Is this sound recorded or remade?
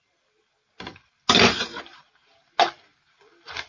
recorded